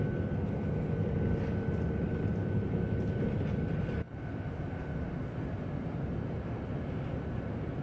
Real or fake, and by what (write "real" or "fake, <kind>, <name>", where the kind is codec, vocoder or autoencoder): real